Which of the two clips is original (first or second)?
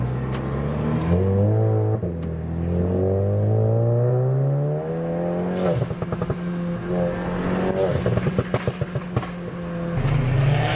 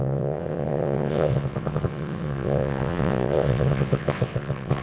first